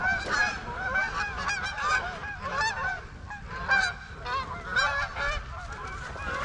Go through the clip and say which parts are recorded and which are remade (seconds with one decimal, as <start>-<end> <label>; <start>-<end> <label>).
0.0-0.4 recorded; 0.4-2.7 remade; 2.7-4.7 recorded; 4.7-5.9 remade; 5.9-6.4 recorded

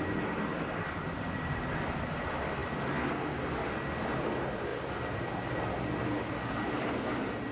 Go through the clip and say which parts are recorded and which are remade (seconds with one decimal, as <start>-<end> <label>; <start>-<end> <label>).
0.0-7.5 recorded

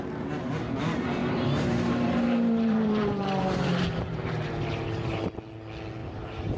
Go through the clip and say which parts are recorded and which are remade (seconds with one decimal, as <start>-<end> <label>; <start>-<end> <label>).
0.0-1.2 recorded; 1.2-5.2 remade; 5.2-6.0 recorded; 6.0-6.6 remade

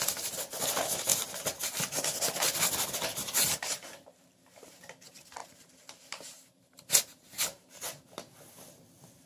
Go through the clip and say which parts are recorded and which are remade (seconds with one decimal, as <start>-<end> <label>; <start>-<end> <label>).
0.0-3.2 recorded; 3.2-4.8 remade; 4.8-5.4 recorded; 5.4-8.0 remade; 8.0-9.3 recorded

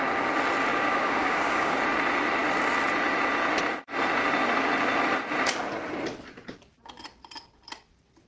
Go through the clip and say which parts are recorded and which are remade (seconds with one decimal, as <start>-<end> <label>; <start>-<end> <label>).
0.0-0.7 recorded; 0.7-1.8 remade; 1.8-8.3 recorded

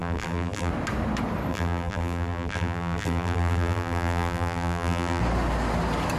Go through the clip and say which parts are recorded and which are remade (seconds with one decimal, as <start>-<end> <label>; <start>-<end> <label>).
0.0-0.7 remade; 0.7-1.5 recorded; 1.5-5.2 remade; 5.2-6.2 recorded

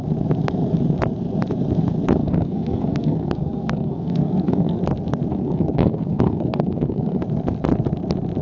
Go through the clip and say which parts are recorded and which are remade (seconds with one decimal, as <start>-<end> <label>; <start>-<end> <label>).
0.0-2.2 recorded; 2.2-4.8 remade; 4.8-5.3 recorded; 5.3-7.2 remade; 7.2-8.4 recorded